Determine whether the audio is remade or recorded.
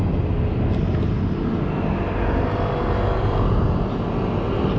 recorded